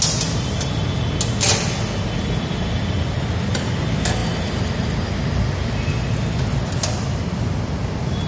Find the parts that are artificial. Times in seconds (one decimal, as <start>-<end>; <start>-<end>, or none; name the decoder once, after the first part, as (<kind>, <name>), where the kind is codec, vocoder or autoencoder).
none

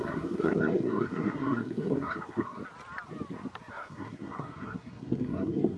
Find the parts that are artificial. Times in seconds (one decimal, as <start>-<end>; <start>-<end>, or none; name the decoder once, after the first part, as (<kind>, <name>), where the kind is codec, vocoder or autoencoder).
0.0-2.6 (codec, SNAC); 3.7-5.8

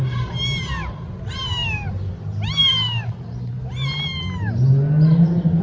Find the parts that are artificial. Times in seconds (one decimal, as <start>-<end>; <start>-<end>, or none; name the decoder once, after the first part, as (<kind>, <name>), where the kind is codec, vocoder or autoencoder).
none

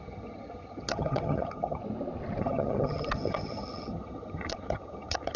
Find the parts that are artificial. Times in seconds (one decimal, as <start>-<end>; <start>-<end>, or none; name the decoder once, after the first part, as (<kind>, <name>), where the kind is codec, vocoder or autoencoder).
0.0-1.8 (vocoder, HiFi-GAN); 2.4-5.4

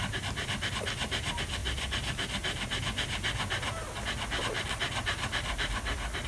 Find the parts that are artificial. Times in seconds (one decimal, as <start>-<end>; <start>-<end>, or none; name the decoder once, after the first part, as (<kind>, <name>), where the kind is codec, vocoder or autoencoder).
none

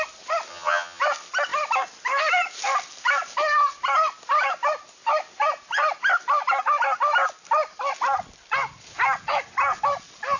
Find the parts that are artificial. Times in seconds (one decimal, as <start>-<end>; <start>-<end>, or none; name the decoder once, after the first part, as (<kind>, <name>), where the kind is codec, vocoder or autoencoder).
0.5-1.0 (vocoder, HiFi-GAN)

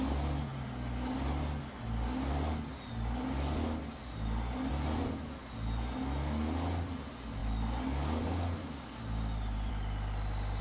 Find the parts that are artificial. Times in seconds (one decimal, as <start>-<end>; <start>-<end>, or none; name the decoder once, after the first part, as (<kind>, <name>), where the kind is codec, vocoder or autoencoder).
none